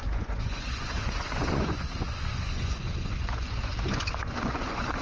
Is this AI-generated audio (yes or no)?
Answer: yes